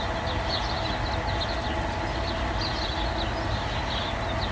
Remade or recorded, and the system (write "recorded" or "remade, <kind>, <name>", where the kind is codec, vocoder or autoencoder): recorded